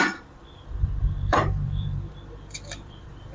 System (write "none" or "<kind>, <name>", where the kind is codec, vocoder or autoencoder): vocoder, BigVGAN v2